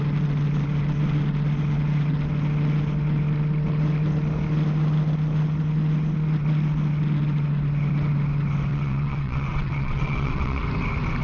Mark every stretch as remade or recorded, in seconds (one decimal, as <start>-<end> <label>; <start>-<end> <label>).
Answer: 0.0-8.7 recorded; 8.7-10.6 remade; 10.6-11.2 recorded